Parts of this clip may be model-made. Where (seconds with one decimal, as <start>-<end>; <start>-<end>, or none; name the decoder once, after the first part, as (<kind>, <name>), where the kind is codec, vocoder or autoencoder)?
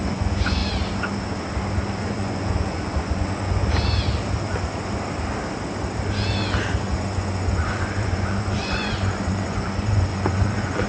0.0-0.6 (vocoder, Vocos); 2.0-3.6; 6.8-10.9